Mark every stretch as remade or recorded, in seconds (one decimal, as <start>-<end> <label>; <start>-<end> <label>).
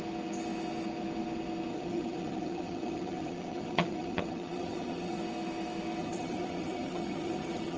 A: 0.0-1.7 recorded; 1.7-5.2 remade; 5.2-6.0 recorded; 6.0-7.8 remade